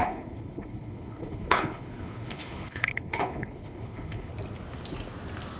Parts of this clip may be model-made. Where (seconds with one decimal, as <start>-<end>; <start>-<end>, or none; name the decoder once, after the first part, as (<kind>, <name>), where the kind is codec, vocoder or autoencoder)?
0.0-4.3 (codec, HILCodec)